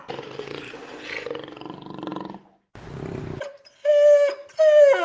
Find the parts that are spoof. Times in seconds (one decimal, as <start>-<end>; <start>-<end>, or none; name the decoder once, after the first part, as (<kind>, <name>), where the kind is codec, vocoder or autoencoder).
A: none